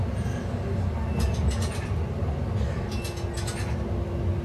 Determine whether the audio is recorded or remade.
recorded